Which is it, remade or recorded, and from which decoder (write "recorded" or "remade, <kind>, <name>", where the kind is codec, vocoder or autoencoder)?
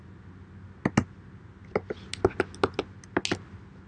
recorded